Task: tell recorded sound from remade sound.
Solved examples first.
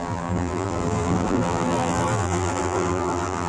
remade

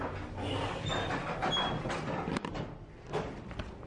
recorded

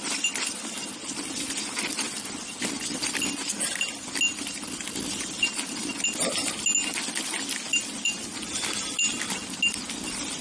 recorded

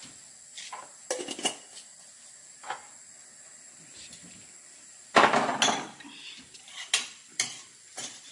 recorded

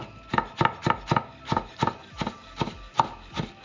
recorded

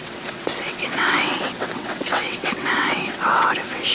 remade